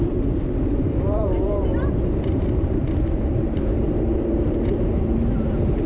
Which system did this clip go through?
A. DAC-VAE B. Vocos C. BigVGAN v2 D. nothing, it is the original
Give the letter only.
C